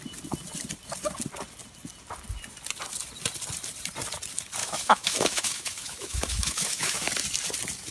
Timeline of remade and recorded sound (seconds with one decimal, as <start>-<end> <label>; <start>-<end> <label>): 0.0-4.6 recorded; 4.6-7.1 remade; 7.1-7.9 recorded